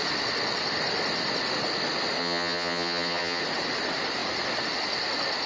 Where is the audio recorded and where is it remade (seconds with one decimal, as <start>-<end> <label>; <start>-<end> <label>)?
0.0-2.2 recorded; 2.2-3.4 remade; 3.4-5.5 recorded